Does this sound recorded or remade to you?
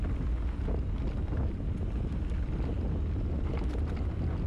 recorded